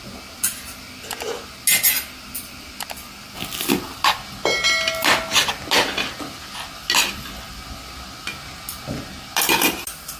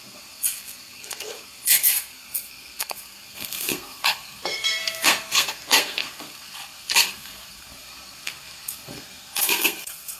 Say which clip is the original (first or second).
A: first